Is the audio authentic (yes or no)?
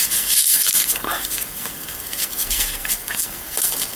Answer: no